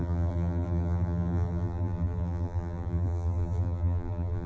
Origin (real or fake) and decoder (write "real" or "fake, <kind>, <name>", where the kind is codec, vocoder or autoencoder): fake, vocoder, BigVGAN v2